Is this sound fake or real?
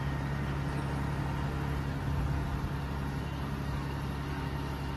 real